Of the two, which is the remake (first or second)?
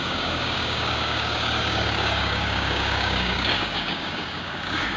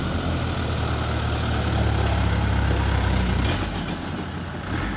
first